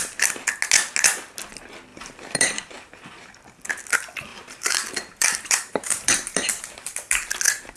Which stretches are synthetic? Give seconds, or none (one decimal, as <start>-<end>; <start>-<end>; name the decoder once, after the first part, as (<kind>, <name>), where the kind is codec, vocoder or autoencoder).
1.9-3.7 (vocoder, BigVGAN v2); 4.3-6.9